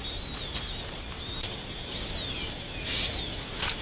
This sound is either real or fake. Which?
real